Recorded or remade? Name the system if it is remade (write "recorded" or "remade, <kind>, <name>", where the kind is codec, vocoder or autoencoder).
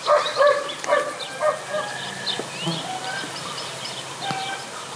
recorded